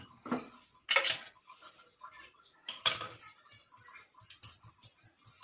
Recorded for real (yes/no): yes